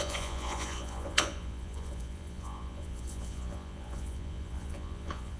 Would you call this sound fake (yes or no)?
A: yes